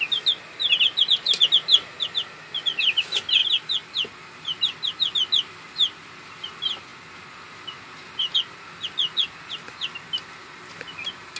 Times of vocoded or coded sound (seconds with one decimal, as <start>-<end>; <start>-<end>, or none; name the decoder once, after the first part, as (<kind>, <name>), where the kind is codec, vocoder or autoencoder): none